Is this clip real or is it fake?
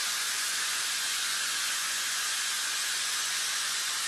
fake